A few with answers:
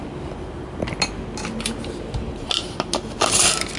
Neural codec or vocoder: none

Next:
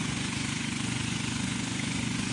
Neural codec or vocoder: vocoder, Vocos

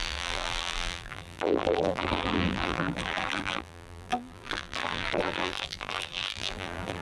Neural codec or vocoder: vocoder, BigVGAN v2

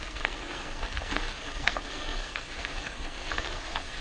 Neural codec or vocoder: codec, SNAC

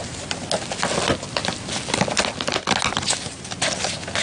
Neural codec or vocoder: none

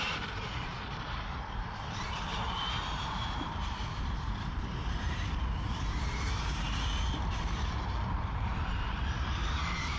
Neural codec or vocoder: vocoder, BigVGAN v2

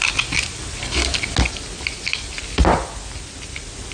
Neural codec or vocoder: none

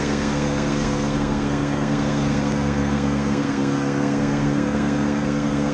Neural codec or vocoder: codec, SNAC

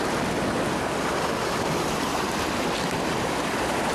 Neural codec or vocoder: vocoder, BigVGAN v2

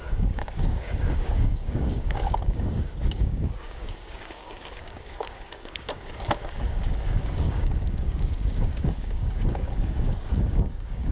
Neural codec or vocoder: codec, DAC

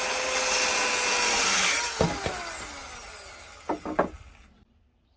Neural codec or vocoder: none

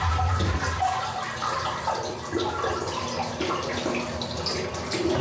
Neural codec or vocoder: none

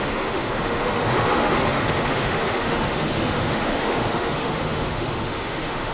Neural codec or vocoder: autoencoder, DAC-VAE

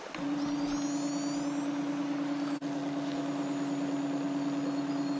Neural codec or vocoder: none